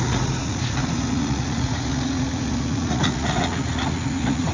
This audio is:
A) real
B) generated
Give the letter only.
B